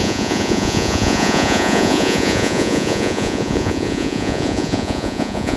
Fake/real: fake